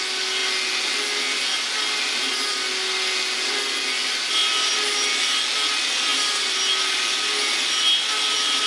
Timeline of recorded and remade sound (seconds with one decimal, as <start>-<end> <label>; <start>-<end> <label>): 0.0-8.7 recorded